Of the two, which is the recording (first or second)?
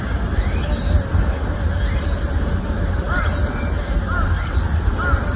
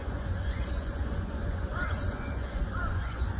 first